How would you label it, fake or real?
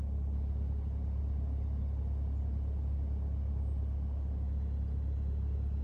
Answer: real